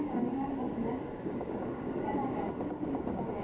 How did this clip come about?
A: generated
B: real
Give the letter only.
A